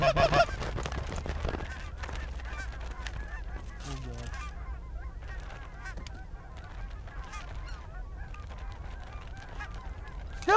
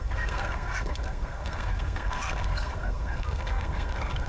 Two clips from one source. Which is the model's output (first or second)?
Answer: second